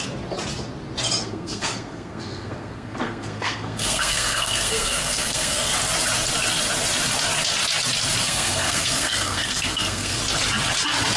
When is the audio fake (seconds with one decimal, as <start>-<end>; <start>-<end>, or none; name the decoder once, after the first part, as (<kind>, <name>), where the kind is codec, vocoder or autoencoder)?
1.2-5.7 (codec, SNAC); 8.2-10.2